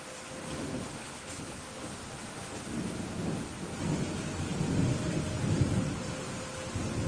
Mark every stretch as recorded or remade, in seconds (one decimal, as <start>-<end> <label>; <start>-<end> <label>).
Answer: 0.0-1.0 recorded; 1.0-1.6 remade; 1.6-7.1 recorded